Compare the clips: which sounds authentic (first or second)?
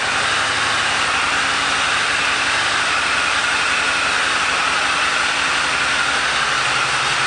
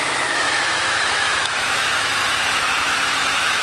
first